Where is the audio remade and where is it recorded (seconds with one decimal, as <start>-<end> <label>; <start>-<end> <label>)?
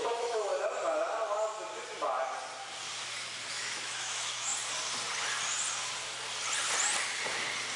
0.0-0.5 remade; 0.5-3.5 recorded; 3.5-4.5 remade; 4.5-7.8 recorded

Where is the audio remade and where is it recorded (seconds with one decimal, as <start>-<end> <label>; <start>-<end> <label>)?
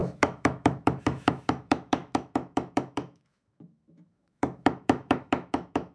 0.0-5.9 remade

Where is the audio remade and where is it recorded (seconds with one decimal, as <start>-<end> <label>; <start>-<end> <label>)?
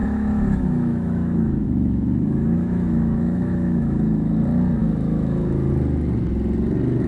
0.0-4.3 remade; 4.3-4.8 recorded; 4.8-5.7 remade; 5.7-7.1 recorded